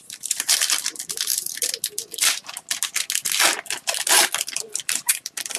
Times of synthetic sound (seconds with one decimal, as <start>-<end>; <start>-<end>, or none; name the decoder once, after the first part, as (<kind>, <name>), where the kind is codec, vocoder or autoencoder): 0.0-1.3 (vocoder, BigVGAN v2); 4.1-5.6